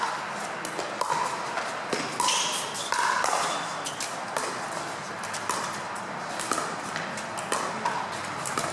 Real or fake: real